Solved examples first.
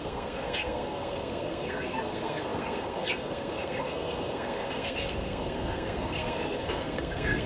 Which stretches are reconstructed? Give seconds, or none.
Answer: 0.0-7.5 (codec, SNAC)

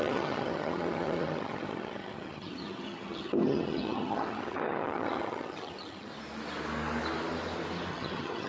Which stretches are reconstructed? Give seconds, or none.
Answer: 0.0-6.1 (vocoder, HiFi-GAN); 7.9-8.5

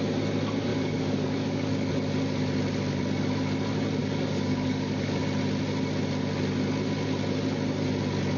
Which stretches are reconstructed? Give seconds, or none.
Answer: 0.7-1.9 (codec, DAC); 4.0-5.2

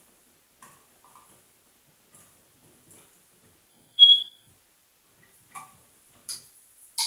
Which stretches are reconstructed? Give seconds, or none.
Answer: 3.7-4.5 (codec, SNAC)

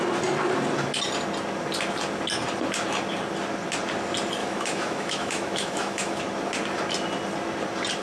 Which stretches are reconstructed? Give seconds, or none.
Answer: 4.4-6.2 (autoencoder, DAC-VAE)

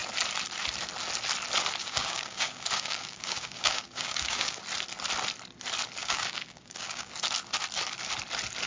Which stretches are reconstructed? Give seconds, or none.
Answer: 1.8-4.6 (codec, DAC); 6.0-7.1